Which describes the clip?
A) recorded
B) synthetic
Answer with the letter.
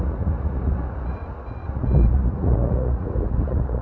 B